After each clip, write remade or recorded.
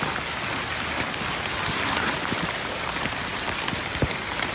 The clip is recorded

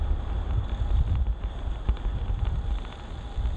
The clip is recorded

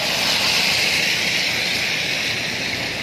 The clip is recorded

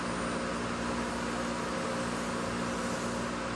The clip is recorded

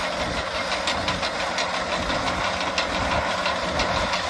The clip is recorded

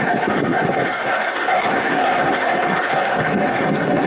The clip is remade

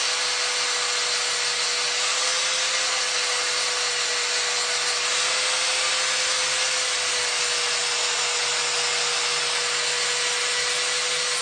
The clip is recorded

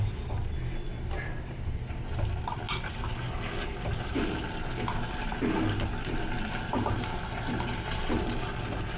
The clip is recorded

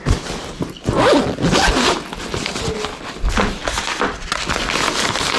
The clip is recorded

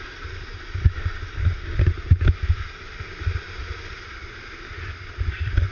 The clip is recorded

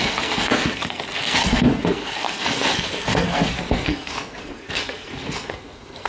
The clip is remade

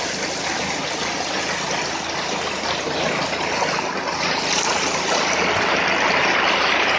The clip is recorded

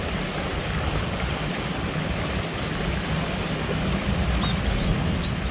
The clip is recorded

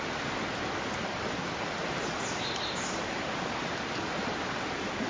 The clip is recorded